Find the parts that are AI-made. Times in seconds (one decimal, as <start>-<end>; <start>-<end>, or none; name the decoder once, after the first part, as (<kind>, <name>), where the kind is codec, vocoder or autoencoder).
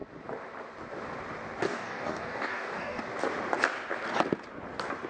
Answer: 1.7-3.0 (codec, DAC)